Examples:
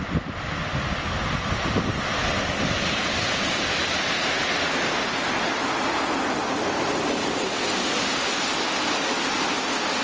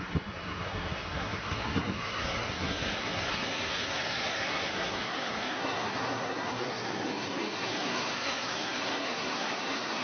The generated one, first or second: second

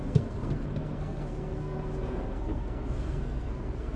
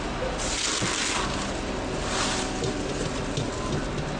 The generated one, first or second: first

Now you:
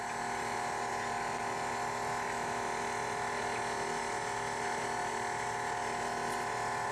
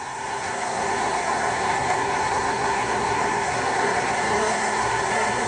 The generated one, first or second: second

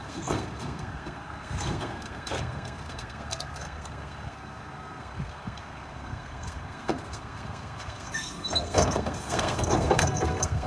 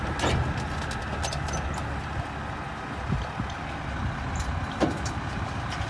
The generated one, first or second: first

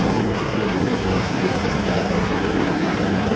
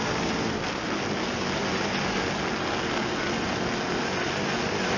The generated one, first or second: first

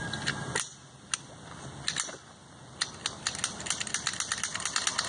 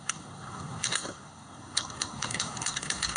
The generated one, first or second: second